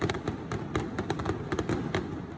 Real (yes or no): yes